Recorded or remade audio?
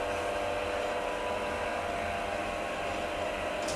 recorded